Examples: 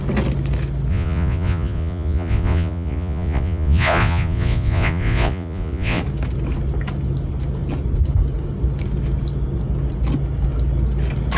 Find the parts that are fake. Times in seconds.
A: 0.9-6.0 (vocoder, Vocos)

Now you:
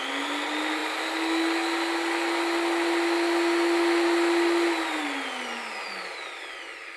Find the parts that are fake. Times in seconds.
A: none

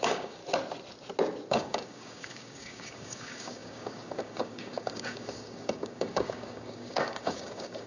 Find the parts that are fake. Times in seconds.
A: 0.0-0.4 (codec, DAC); 1.5-7.9

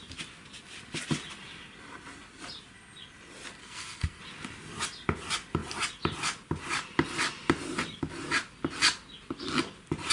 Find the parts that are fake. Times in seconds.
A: 3.6-4.2 (codec, SNAC)

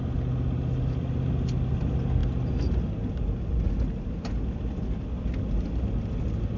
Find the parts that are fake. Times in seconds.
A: none

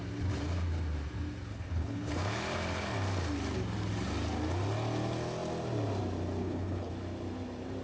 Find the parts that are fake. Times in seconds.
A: 1.5-2.1 (codec, HILCodec); 6.4-6.9

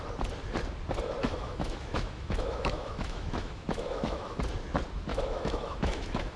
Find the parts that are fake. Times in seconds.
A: 1.2-4.4 (autoencoder, DAC-VAE); 5.1-6.4